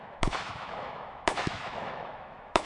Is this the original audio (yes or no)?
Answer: no